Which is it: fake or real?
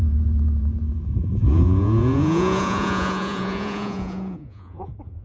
fake